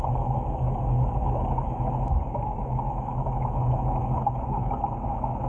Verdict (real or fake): fake